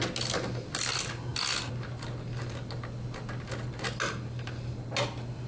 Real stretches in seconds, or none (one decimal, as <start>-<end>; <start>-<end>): 0.0-5.5